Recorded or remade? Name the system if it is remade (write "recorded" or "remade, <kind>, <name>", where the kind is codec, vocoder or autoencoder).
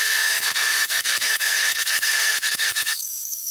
remade, codec, SNAC